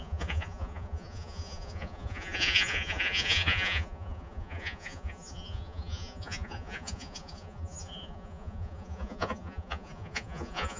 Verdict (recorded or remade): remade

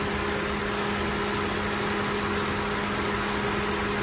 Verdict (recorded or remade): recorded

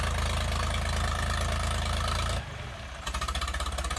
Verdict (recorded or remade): recorded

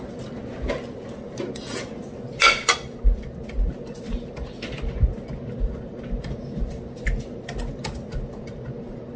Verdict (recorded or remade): recorded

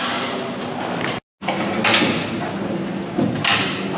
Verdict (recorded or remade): recorded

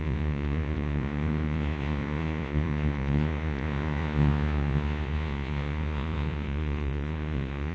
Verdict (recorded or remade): remade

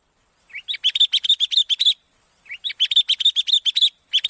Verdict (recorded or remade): recorded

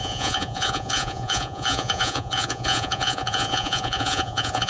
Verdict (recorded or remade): remade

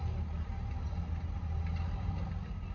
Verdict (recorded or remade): recorded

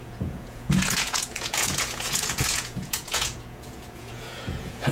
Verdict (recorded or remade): remade